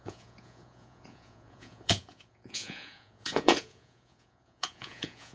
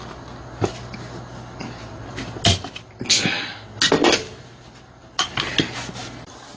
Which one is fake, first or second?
first